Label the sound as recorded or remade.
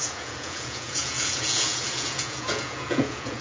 remade